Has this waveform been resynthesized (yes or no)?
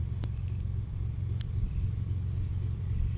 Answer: no